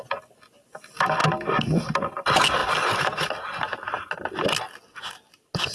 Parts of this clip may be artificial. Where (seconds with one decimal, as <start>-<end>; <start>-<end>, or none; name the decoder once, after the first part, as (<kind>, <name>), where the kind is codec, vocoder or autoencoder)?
none